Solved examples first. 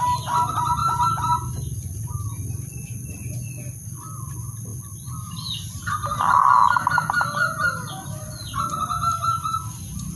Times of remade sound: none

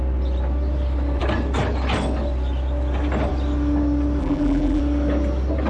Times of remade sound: 4.2-4.8 (vocoder, BigVGAN v2)

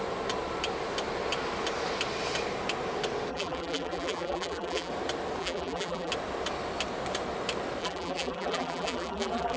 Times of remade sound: 3.3-4.9 (vocoder, BigVGAN v2); 5.4-6.1; 7.8-9.6

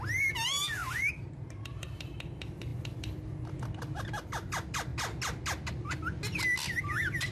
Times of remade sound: 0.0-0.8 (vocoder, BigVGAN v2); 1.5-4.9; 6.8-7.3

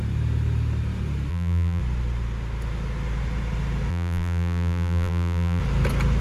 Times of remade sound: 1.3-1.8 (vocoder, BigVGAN v2); 3.9-5.6